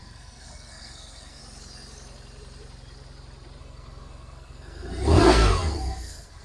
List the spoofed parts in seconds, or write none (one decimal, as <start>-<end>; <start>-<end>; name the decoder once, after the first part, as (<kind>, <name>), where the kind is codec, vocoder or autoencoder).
0.0-1.4 (codec, SNAC); 3.6-6.4